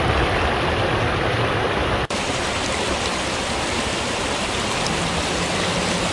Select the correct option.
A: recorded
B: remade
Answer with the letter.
A